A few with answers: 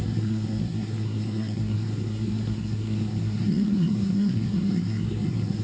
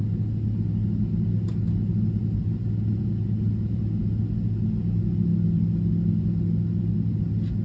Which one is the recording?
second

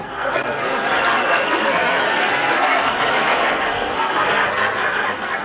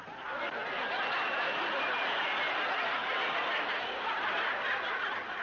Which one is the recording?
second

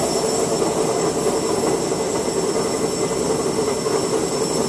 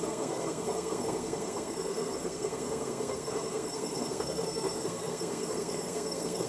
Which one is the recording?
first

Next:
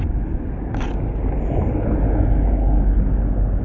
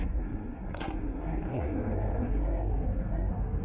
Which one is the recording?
first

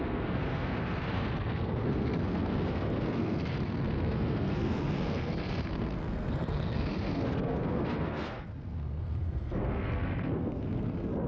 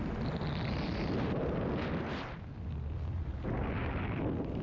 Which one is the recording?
second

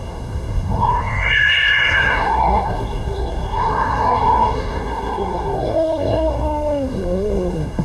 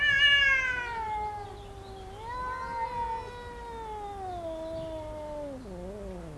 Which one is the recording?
second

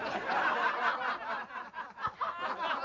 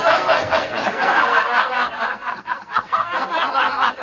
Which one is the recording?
first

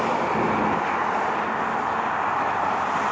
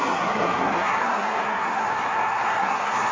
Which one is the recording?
first